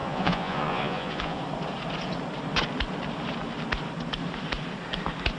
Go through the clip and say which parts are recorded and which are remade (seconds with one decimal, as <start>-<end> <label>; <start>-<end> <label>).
0.0-1.4 remade; 1.4-5.4 recorded